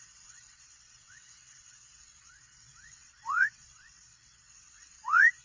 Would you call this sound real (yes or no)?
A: no